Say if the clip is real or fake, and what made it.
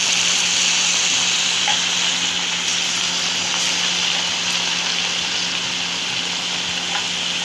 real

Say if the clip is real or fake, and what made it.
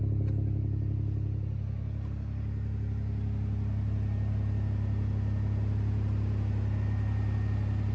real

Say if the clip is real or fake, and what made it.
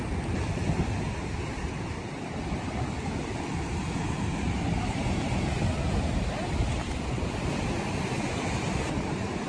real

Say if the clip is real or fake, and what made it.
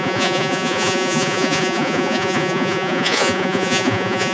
fake, vocoder, Vocos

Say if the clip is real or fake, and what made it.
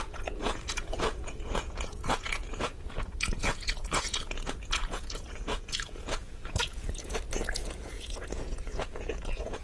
fake, vocoder, Vocos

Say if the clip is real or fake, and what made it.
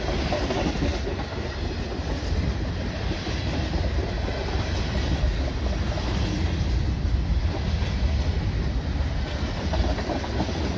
real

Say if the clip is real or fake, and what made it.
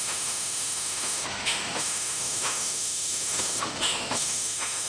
fake, autoencoder, DAC-VAE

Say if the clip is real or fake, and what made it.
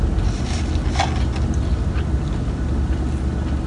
real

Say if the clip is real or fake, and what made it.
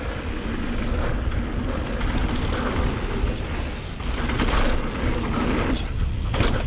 real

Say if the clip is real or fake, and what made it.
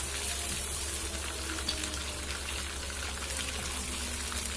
real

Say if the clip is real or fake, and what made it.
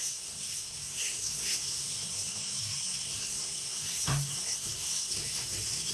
fake, codec, SNAC